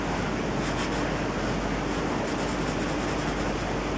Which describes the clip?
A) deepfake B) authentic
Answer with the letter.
B